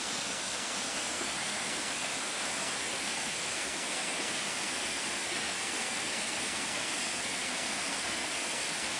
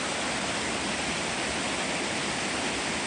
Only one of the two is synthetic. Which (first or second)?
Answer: first